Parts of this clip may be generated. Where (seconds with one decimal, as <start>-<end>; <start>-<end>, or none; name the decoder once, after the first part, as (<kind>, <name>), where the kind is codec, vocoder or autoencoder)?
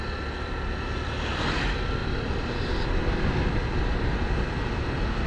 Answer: none